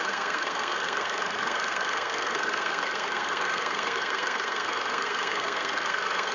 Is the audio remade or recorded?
remade